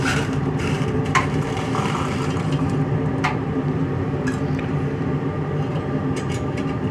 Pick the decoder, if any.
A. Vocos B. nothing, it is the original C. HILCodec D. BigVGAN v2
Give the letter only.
D